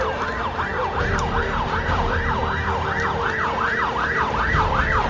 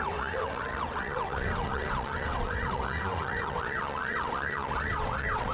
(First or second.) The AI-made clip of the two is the second